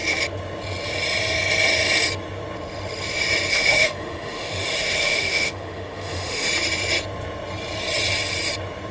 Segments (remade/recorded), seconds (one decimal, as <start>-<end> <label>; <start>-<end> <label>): 0.0-3.5 recorded; 3.5-6.5 remade; 6.5-8.9 recorded